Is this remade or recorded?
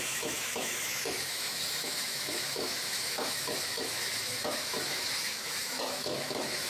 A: remade